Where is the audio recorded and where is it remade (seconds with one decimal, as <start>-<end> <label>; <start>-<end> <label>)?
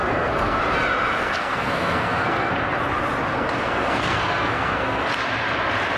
0.0-0.6 remade; 0.6-1.2 recorded; 1.2-2.5 remade; 2.5-3.3 recorded; 3.3-5.1 remade; 5.1-6.0 recorded